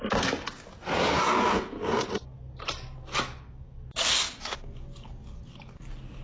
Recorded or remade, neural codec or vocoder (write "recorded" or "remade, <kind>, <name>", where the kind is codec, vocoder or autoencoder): recorded